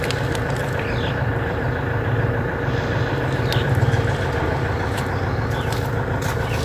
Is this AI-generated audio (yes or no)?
yes